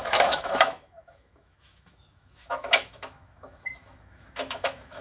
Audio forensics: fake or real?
fake